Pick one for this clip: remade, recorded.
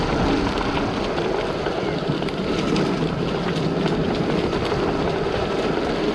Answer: recorded